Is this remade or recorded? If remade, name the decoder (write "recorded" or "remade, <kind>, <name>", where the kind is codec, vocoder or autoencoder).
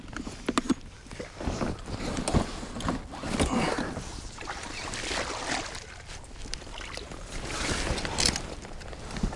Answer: recorded